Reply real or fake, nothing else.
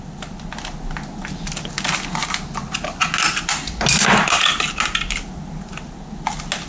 real